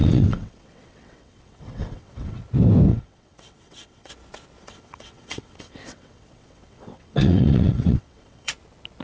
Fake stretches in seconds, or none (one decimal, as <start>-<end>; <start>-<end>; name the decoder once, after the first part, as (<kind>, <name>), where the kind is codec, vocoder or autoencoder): 0.0-2.4 (vocoder, WaveNeXt); 2.9-4.1; 4.6-8.5